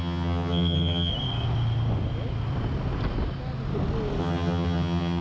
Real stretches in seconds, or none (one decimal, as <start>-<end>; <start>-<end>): 1.1-4.2